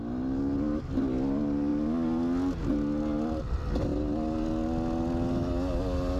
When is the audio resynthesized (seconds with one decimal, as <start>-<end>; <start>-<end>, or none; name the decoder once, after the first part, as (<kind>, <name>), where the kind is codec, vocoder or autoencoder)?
none